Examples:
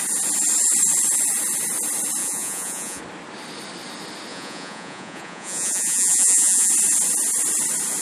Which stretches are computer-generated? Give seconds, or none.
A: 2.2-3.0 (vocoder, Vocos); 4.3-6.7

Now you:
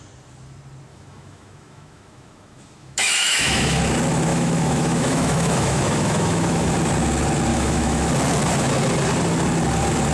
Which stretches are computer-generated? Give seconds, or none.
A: 0.9-3.8 (autoencoder, DAC-VAE); 4.3-6.7; 7.5-8.1

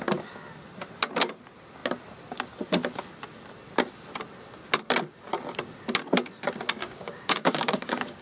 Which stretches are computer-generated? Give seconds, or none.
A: 6.8-8.2 (codec, DAC)

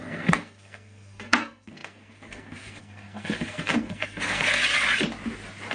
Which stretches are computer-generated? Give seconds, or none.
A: 0.0-4.6 (codec, SNAC)

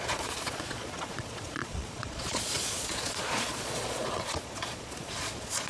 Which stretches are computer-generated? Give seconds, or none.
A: 0.0-5.7 (vocoder, Vocos)

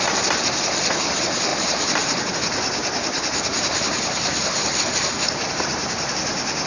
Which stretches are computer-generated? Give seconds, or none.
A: 1.5-2.3 (vocoder, BigVGAN v2); 3.5-6.1